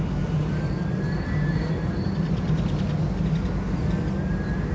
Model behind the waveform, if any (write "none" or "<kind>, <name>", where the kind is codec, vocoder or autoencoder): none